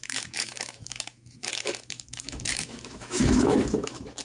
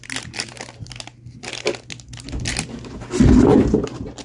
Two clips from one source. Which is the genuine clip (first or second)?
second